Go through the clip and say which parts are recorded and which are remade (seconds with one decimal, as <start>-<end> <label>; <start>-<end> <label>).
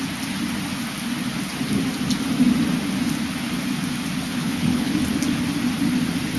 0.0-4.3 recorded; 4.3-4.9 remade; 4.9-6.4 recorded